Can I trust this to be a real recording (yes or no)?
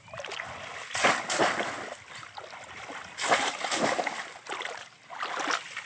yes